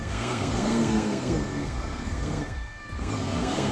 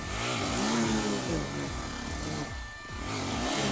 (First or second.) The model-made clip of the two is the first